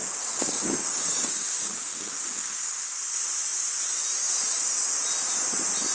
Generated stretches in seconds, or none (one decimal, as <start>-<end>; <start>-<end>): 0.0-2.8